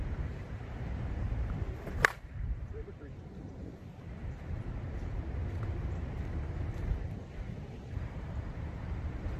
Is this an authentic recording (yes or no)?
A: no